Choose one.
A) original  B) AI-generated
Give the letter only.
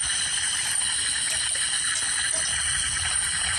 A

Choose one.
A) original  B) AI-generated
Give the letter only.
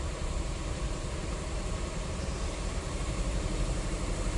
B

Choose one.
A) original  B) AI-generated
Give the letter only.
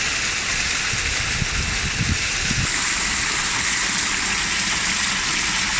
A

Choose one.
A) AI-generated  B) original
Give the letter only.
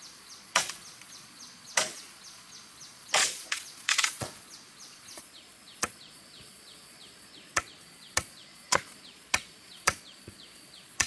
A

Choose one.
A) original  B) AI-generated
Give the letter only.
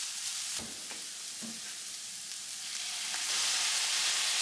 A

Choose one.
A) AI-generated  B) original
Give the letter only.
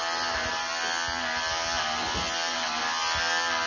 B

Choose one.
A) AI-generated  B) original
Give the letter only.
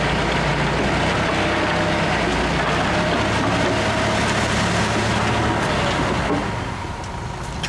B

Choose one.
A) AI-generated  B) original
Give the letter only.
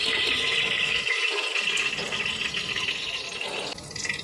B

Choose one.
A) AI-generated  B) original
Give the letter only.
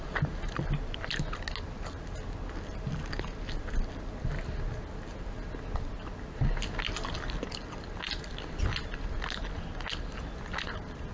B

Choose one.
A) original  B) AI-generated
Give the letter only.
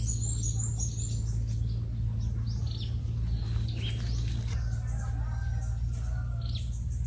A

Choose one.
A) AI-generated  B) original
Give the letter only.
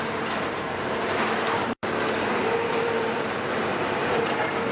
A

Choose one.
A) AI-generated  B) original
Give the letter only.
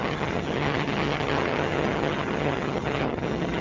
A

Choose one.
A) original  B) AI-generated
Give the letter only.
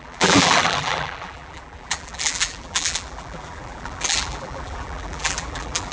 B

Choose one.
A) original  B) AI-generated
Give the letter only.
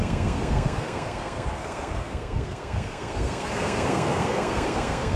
B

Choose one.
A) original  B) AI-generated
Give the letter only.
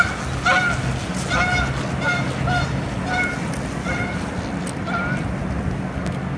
A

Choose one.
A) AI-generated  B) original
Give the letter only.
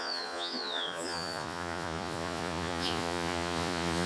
A